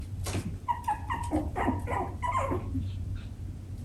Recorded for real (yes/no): yes